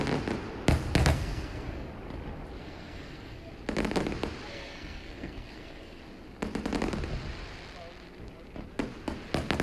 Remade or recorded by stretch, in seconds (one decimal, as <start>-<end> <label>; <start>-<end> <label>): 0.0-1.0 recorded; 1.0-1.9 remade; 1.9-2.6 recorded; 2.6-3.5 remade; 3.5-4.5 recorded; 4.5-6.0 remade; 6.0-9.6 recorded